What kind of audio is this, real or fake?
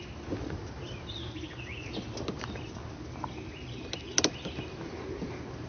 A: real